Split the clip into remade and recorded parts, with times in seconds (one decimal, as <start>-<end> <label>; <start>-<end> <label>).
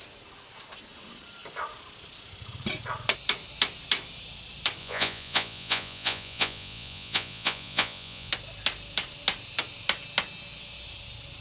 0.0-4.8 recorded; 4.8-8.3 remade; 8.3-11.4 recorded